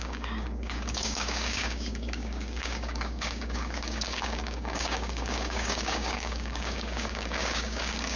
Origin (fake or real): fake